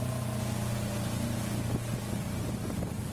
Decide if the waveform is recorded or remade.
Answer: recorded